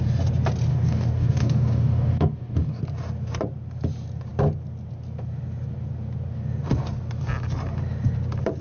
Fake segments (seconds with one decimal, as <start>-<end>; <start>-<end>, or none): 0.7-2.8